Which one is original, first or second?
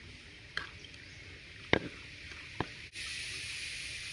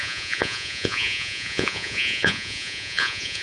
first